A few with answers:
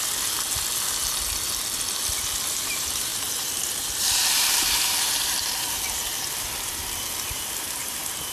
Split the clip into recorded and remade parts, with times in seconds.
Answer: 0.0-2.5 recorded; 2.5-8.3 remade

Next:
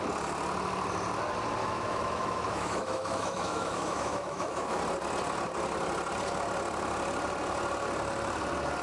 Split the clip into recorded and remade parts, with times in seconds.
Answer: 0.0-1.6 recorded; 1.6-4.8 remade; 4.8-8.8 recorded

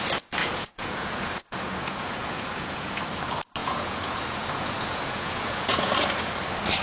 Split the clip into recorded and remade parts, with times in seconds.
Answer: 0.0-0.4 recorded; 0.4-3.0 remade; 3.0-3.6 recorded; 3.6-6.3 remade; 6.3-6.8 recorded

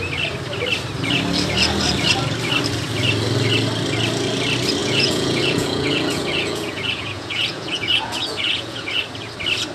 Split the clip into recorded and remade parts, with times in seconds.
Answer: 0.0-4.8 recorded; 4.8-9.0 remade; 9.0-9.7 recorded

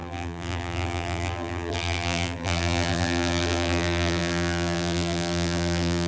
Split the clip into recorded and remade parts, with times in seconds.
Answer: 0.0-6.1 remade

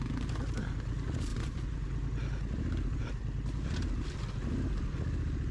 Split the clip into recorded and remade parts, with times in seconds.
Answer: 0.0-5.5 recorded